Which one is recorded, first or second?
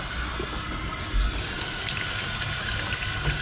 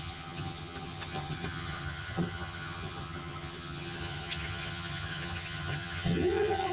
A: first